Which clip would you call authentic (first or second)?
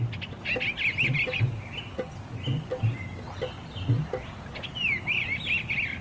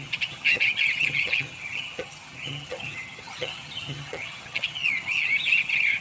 first